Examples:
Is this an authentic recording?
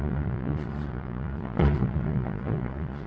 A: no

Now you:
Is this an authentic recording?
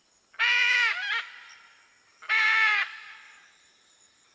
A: yes